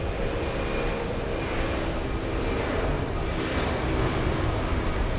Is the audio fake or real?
real